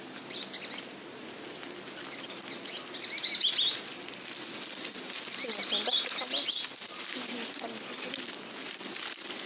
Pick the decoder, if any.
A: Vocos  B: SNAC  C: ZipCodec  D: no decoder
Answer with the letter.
D